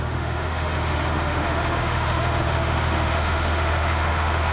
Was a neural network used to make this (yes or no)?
yes